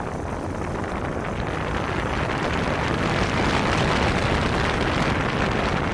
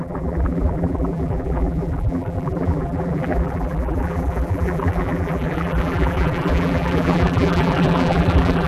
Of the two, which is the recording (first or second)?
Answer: first